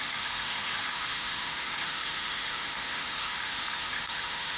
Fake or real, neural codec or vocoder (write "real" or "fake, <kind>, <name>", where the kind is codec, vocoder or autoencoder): fake, autoencoder, DAC-VAE